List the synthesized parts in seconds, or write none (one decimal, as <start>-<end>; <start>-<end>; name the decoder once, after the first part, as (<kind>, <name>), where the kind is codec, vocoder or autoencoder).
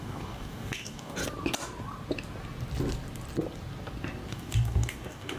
0.0-1.2 (codec, DAC); 4.3-5.4